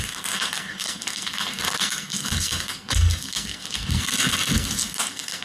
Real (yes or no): no